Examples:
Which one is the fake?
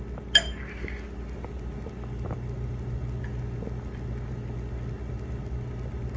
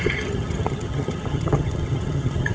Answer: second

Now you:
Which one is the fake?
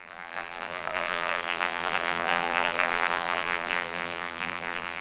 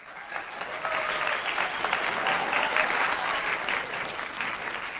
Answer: first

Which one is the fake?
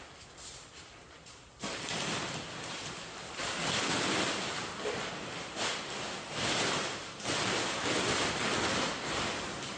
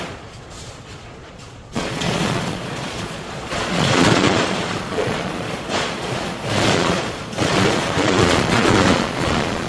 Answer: second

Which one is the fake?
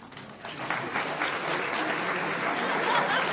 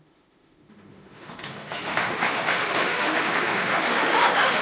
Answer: second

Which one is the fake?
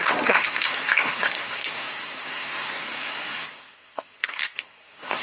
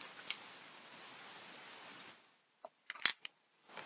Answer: first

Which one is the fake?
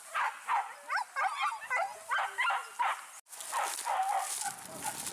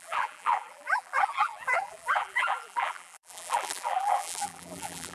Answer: second